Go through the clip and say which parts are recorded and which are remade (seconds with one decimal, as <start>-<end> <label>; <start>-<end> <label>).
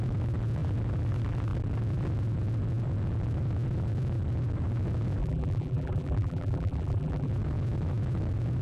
0.0-5.2 recorded; 5.2-7.3 remade; 7.3-8.6 recorded